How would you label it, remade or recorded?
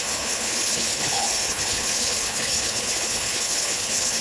remade